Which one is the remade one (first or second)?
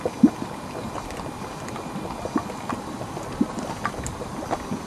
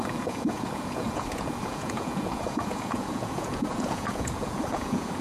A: second